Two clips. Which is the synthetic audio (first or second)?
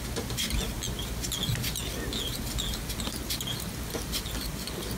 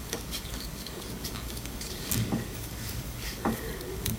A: second